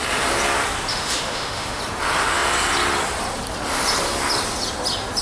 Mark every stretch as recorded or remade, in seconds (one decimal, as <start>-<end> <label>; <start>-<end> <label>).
0.0-0.9 recorded; 0.9-1.8 remade; 1.8-5.2 recorded